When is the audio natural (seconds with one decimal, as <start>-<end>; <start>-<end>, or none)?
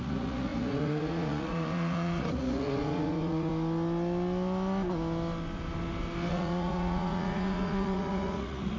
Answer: 3.5-6.3